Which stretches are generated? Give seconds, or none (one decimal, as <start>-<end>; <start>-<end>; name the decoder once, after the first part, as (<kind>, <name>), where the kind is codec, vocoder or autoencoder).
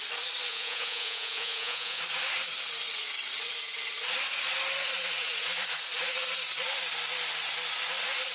0.5-2.0 (vocoder, Vocos)